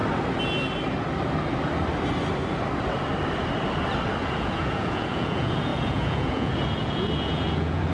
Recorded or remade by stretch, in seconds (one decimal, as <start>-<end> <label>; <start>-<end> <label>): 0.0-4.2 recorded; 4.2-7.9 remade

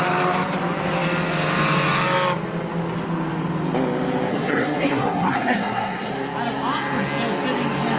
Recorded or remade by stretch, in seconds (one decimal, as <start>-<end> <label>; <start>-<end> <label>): 0.0-4.3 recorded; 4.3-6.1 remade; 6.1-8.0 recorded

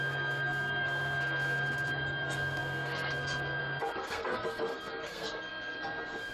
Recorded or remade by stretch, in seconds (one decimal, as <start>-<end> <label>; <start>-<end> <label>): 0.0-6.3 remade

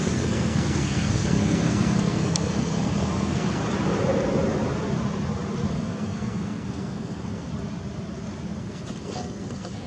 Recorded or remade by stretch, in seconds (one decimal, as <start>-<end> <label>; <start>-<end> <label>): 0.0-3.6 remade; 3.6-5.7 recorded; 5.7-7.5 remade; 7.5-8.6 recorded; 8.6-9.9 remade

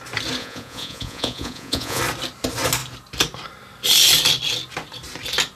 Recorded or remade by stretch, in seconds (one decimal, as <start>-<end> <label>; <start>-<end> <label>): 0.0-0.4 recorded; 0.4-2.0 remade; 2.0-5.6 recorded

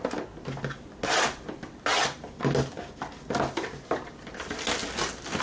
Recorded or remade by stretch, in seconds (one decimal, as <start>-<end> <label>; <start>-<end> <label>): 0.0-5.4 recorded

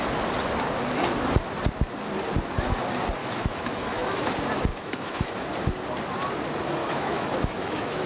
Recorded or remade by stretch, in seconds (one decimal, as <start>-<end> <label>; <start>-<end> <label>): 0.0-3.2 recorded; 3.2-4.3 remade; 4.3-4.7 recorded; 4.7-5.3 remade; 5.3-6.8 recorded; 6.8-8.1 remade

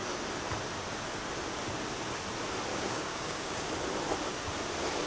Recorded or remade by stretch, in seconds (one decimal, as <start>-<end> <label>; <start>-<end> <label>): 0.0-2.7 recorded; 2.7-3.7 remade; 3.7-5.1 recorded